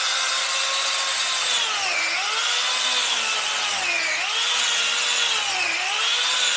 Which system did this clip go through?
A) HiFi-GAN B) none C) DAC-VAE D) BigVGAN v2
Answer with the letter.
B